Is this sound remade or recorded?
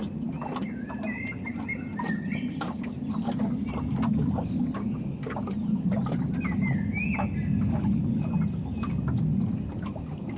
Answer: recorded